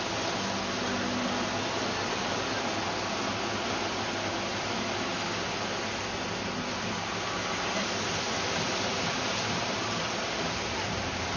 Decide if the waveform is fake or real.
real